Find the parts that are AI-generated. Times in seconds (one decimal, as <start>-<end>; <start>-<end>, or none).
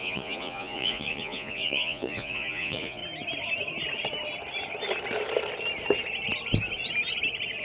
0.0-3.0